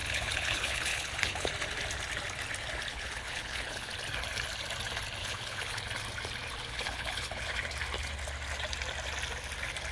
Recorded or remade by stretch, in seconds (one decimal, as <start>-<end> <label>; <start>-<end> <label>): 0.0-1.5 remade; 1.5-2.9 recorded; 2.9-3.9 remade; 3.9-5.2 recorded; 5.2-5.8 remade; 5.8-6.6 recorded; 6.6-7.4 remade; 7.4-9.9 recorded